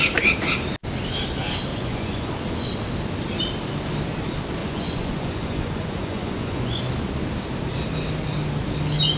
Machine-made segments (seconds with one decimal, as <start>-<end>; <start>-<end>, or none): 1.7-2.3; 4.6-6.8